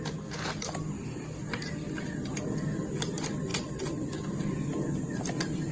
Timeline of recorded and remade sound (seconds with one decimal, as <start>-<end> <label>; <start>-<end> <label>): 0.0-5.7 recorded